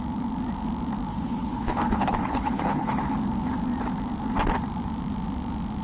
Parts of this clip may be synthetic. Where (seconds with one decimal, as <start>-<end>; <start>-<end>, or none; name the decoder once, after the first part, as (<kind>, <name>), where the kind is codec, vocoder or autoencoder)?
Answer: 1.1-3.0 (codec, HILCodec)